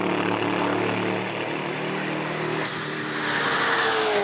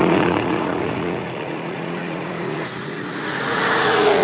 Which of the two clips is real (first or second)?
first